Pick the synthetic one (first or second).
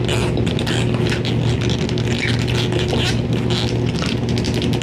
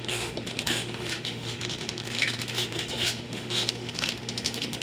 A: second